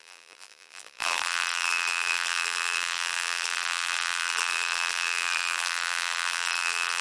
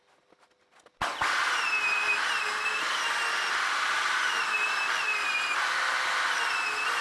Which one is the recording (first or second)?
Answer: second